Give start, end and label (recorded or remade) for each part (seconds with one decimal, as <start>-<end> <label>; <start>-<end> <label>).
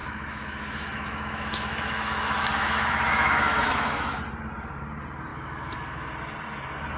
0.0-4.2 remade; 4.2-5.3 recorded; 5.3-6.1 remade; 6.1-7.0 recorded